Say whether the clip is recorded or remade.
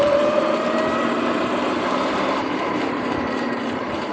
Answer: remade